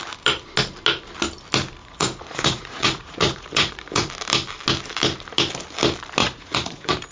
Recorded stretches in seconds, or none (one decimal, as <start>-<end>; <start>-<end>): 0.0-1.8; 4.1-6.2